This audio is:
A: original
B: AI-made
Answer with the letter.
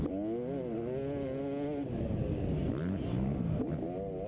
A